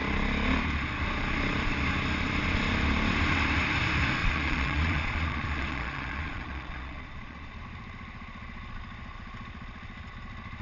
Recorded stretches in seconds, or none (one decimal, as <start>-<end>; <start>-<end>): 0.0-4.2; 7.6-10.6